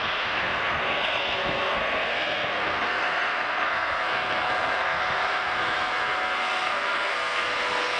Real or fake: fake